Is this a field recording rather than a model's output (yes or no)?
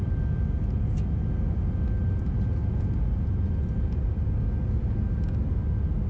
yes